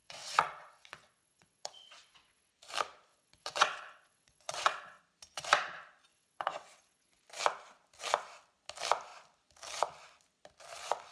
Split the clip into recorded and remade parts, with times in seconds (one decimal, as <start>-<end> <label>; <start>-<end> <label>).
0.0-2.5 remade; 2.5-3.1 recorded; 3.1-5.0 remade; 5.0-6.1 recorded; 6.1-7.2 remade; 7.2-11.1 recorded